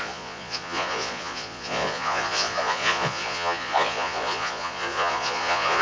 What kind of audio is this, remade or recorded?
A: remade